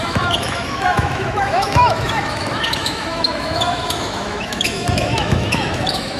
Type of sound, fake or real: fake